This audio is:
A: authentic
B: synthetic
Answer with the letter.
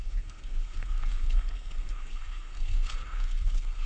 B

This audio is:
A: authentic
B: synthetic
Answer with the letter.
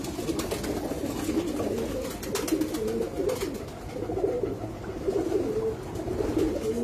A